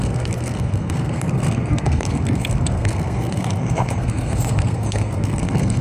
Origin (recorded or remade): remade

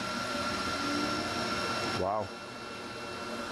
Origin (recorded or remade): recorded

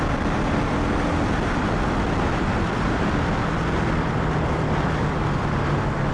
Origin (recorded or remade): recorded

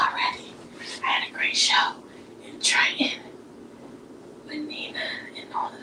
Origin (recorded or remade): recorded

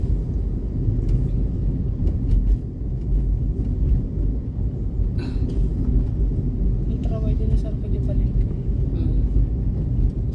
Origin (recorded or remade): recorded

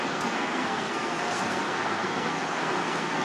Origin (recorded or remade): remade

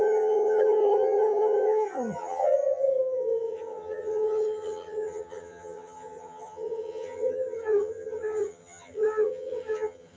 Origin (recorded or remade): remade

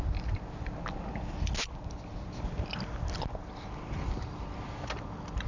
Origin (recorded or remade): recorded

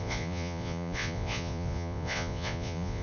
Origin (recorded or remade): remade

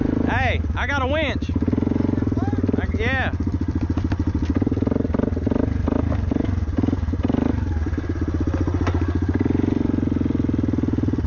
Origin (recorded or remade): recorded